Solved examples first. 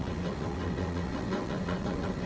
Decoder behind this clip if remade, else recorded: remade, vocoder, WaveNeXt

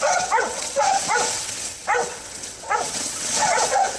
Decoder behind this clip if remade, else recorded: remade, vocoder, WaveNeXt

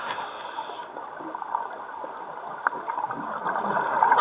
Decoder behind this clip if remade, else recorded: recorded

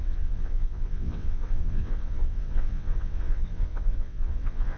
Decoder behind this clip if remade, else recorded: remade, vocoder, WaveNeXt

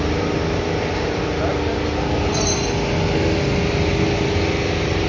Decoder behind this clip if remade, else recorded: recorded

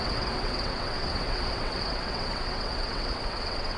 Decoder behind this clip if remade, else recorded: remade, vocoder, WaveNeXt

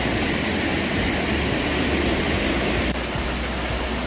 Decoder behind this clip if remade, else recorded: recorded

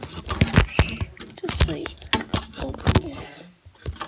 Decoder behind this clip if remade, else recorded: recorded